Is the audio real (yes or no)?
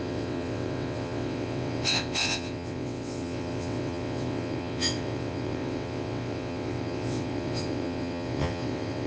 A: no